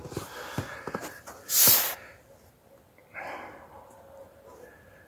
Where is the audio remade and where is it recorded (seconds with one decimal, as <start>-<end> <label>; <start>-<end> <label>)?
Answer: 0.0-5.1 recorded